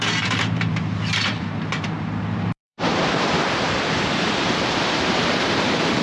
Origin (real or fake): fake